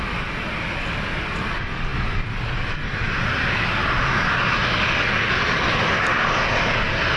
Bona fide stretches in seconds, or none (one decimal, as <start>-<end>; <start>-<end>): 0.0-7.2